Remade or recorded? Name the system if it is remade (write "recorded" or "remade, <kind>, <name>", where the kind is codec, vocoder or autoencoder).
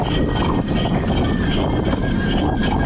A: recorded